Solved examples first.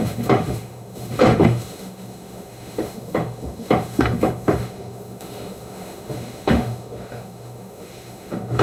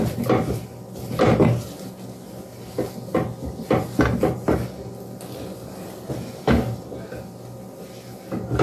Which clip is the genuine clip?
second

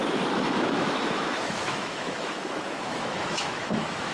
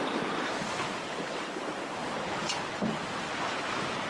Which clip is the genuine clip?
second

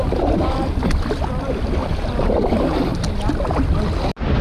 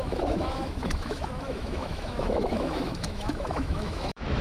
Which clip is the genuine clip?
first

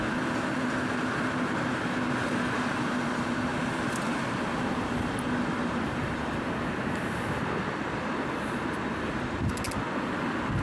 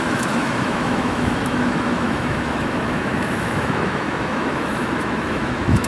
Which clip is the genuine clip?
first